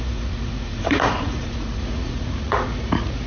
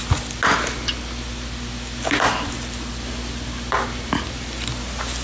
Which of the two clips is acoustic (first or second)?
second